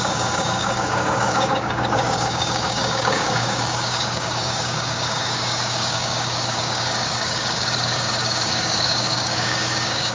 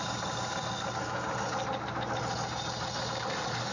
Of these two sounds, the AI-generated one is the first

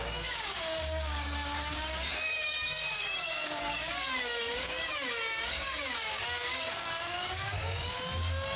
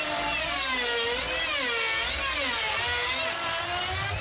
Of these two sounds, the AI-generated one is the first